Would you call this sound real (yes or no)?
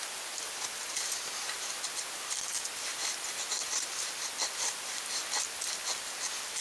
yes